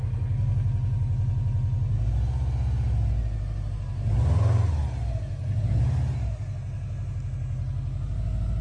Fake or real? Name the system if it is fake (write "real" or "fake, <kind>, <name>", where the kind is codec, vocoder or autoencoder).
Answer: real